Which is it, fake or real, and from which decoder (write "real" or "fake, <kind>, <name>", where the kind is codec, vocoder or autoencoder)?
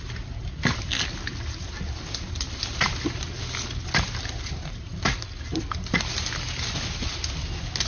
real